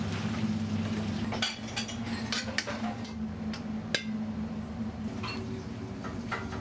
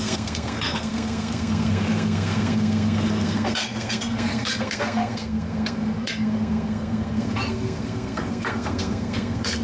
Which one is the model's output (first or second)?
second